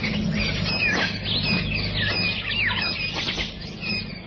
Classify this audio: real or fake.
real